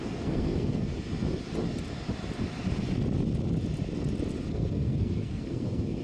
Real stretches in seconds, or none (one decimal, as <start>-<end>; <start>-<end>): 0.9-4.5

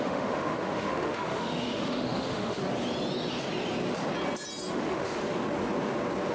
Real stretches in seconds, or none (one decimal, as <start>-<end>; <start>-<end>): 2.6-4.7; 5.2-6.3